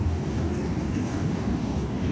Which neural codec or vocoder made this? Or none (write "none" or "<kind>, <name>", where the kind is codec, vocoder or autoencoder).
codec, DAC